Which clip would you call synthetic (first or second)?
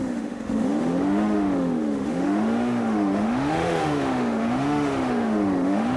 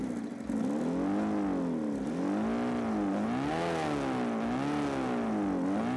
first